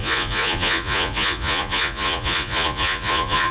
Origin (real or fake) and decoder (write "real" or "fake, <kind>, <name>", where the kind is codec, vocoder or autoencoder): fake, vocoder, Vocos